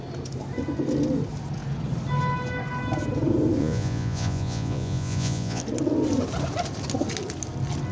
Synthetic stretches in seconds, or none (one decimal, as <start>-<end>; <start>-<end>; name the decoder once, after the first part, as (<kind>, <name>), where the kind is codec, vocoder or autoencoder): 3.6-5.6 (vocoder, Vocos)